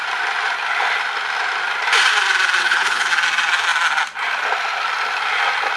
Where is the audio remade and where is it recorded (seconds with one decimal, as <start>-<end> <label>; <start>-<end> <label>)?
0.0-2.6 recorded; 2.6-3.1 remade; 3.1-5.8 recorded